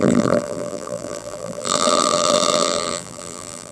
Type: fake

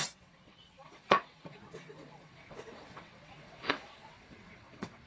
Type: fake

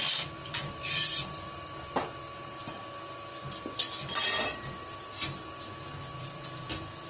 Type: real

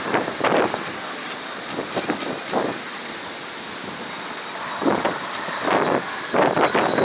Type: real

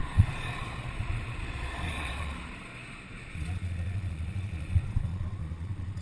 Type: fake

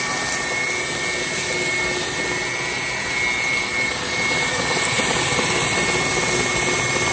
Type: real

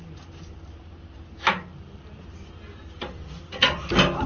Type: real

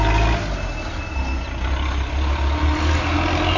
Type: real